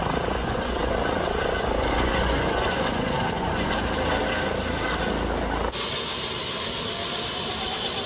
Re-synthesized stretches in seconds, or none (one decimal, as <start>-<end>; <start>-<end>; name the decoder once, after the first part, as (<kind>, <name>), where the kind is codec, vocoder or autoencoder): 0.4-3.7 (vocoder, Vocos)